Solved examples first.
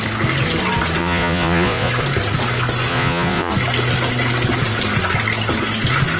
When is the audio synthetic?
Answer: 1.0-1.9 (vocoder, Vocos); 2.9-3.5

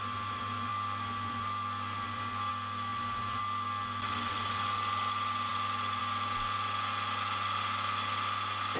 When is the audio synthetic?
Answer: none

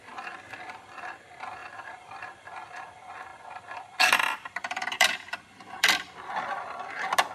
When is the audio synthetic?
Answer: 1.6-2.7 (vocoder, BigVGAN v2); 3.3-6.3